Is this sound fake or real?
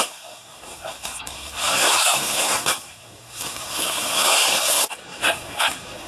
fake